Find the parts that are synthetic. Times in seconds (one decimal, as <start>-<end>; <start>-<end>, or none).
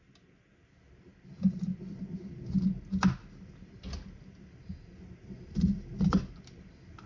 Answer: none